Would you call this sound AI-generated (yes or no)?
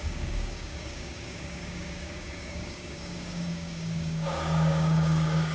yes